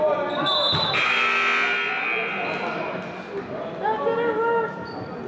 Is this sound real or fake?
real